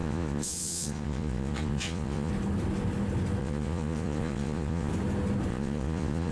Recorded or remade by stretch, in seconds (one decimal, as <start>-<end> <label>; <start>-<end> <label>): 0.0-2.3 remade; 2.3-3.4 recorded; 3.4-4.9 remade; 4.9-5.5 recorded; 5.5-6.3 remade